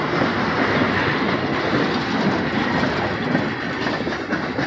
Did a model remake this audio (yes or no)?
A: no